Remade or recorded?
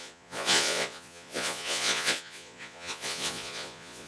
remade